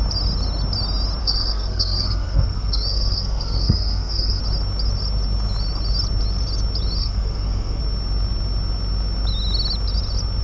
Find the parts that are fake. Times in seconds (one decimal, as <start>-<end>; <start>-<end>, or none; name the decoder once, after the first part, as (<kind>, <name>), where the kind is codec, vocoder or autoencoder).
1.2-4.4 (codec, SNAC); 7.0-7.8